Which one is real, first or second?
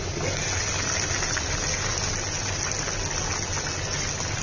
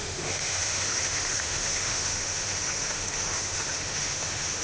first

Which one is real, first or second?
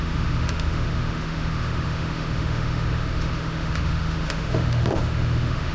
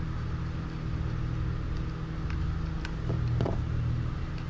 second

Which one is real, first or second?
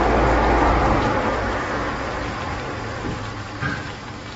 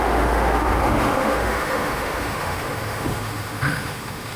first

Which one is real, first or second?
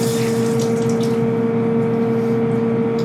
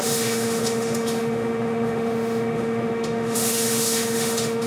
first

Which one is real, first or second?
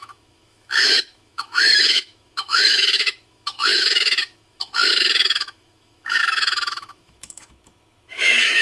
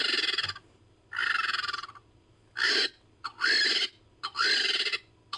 second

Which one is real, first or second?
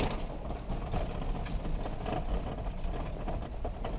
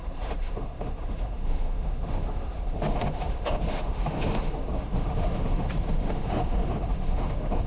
first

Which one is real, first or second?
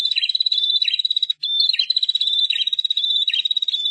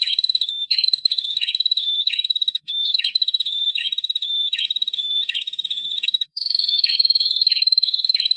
first